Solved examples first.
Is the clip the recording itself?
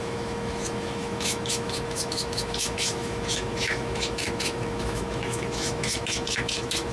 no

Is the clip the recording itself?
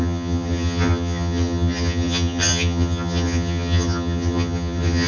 no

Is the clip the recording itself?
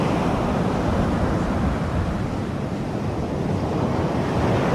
yes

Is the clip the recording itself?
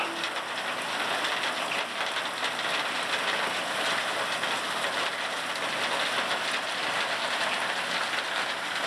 yes